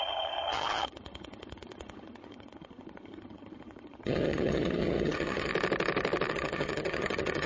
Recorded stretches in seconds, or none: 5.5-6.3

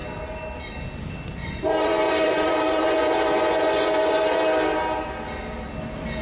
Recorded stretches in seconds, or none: 0.0-1.4; 4.4-6.2

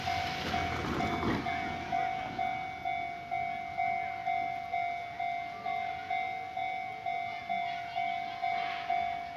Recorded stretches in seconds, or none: 0.0-9.4

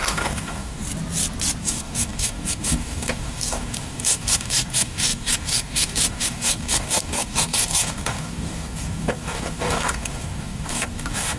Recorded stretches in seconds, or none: 0.8-1.6

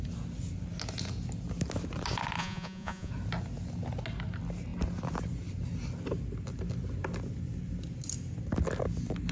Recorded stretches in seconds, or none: 0.0-2.4; 3.1-9.3

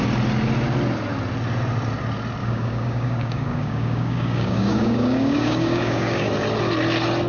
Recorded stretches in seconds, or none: 0.0-2.4; 6.3-7.3

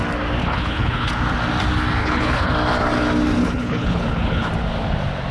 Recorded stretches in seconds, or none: 0.0-0.4; 1.1-2.0; 2.5-3.4; 4.5-5.3

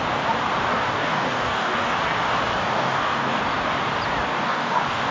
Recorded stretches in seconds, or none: 0.0-0.7; 1.9-2.6; 3.4-4.3